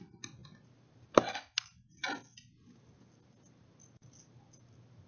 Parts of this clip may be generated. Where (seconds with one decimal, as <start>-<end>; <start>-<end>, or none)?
none